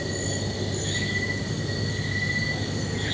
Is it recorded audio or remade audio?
recorded